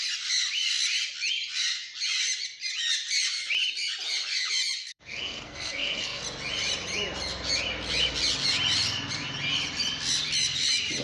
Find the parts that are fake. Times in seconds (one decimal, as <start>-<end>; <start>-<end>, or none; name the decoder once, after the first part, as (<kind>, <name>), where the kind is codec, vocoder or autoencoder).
4.8-6.2 (codec, SNAC)